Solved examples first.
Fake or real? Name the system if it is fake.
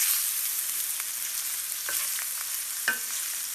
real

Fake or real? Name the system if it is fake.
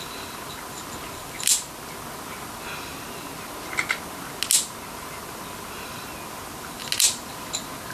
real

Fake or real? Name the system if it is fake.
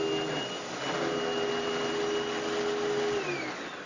real